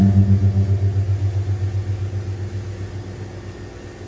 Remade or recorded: recorded